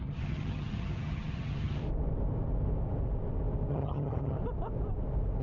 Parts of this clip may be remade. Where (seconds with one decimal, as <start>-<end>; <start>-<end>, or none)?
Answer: 0.0-1.8; 3.7-4.4